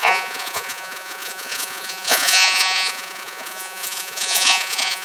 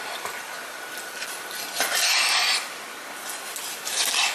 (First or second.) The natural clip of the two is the second